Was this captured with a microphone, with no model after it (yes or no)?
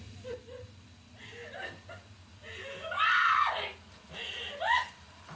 yes